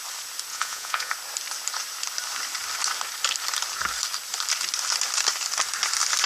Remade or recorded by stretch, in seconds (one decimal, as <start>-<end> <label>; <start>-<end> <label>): 0.0-0.5 recorded; 0.5-1.1 remade; 1.1-6.3 recorded